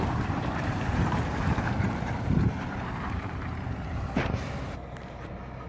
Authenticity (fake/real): fake